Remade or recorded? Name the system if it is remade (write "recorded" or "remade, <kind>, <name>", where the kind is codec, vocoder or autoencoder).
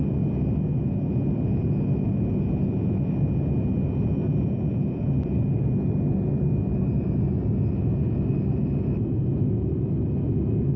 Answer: recorded